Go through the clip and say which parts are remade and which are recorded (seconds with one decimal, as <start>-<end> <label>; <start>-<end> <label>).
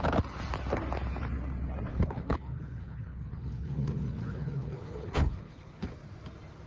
0.0-1.9 recorded; 1.9-5.9 remade; 5.9-6.7 recorded